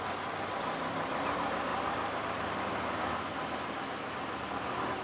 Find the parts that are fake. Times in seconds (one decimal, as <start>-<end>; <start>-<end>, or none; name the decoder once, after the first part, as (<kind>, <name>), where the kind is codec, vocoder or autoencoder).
none